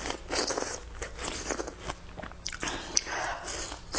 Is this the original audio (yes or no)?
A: yes